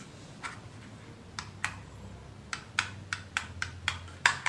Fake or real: real